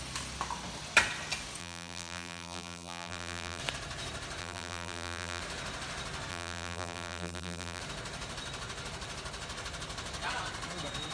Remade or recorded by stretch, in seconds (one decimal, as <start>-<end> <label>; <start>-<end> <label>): 0.0-1.6 recorded; 1.6-3.6 remade; 3.6-4.4 recorded; 4.4-5.4 remade; 5.4-6.3 recorded; 6.3-7.8 remade; 7.8-11.1 recorded